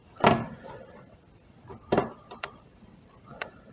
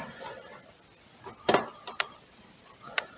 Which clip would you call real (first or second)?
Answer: second